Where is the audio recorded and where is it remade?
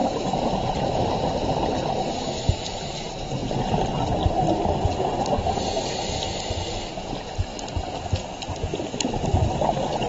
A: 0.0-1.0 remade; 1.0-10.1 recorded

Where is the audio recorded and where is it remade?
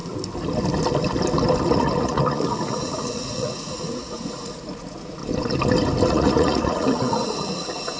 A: 0.0-1.6 recorded; 1.6-5.2 remade; 5.2-6.1 recorded; 6.1-8.0 remade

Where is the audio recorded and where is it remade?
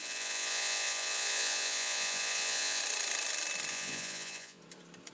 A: 0.0-2.8 remade; 2.8-3.7 recorded; 3.7-4.6 remade; 4.6-5.1 recorded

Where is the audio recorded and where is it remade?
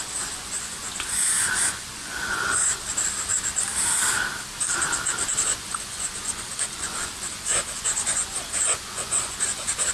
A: 0.0-2.9 remade; 2.9-5.4 recorded; 5.4-9.9 remade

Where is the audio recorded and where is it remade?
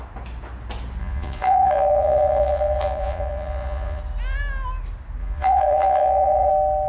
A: 0.0-1.0 recorded; 1.0-4.0 remade; 4.0-5.2 recorded; 5.2-6.5 remade; 6.5-6.9 recorded